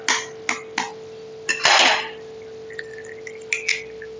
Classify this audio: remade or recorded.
recorded